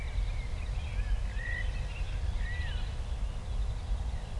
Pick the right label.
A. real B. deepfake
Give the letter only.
A